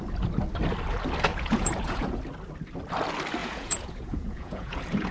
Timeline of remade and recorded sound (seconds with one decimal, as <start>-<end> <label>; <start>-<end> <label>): 0.0-1.3 recorded; 1.3-2.2 remade; 2.2-3.4 recorded; 3.4-5.1 remade